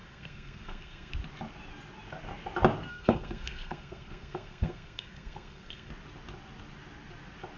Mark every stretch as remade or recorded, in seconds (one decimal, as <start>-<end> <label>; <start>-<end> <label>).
0.0-1.1 remade; 1.1-2.9 recorded; 2.9-5.9 remade; 5.9-7.6 recorded